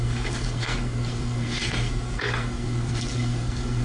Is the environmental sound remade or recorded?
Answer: remade